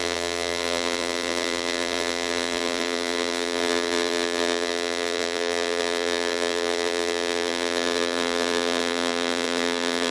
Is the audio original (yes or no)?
no